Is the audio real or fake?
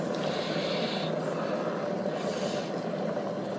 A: real